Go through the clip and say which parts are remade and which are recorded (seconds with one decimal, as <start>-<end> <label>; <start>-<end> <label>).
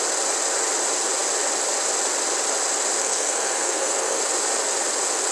0.0-3.0 recorded; 3.0-4.2 remade; 4.2-5.3 recorded